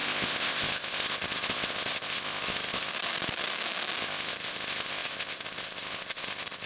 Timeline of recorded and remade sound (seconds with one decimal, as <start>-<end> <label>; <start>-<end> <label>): 0.0-2.9 remade; 2.9-4.0 recorded; 4.0-6.7 remade